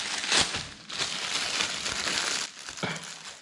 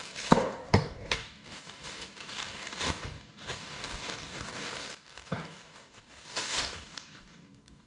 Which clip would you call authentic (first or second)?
first